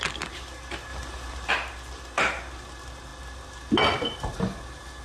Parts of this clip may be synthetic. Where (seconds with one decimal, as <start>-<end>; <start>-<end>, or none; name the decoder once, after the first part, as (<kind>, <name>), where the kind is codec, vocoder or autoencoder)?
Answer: none